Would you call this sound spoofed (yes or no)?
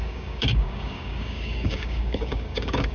yes